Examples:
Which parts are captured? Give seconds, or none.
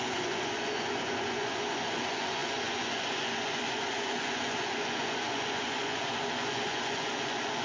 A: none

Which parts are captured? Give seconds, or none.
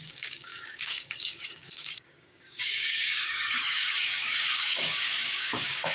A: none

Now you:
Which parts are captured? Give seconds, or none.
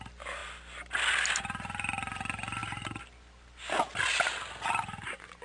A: 0.0-5.4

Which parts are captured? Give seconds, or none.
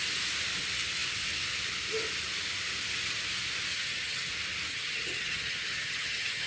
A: 0.0-3.7; 4.3-4.7